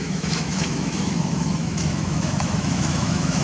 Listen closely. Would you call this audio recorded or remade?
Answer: remade